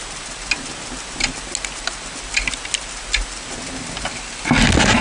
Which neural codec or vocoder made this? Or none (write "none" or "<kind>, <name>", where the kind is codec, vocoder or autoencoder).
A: none